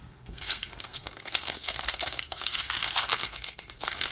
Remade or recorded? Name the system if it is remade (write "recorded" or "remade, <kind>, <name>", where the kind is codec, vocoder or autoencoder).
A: remade, codec, SNAC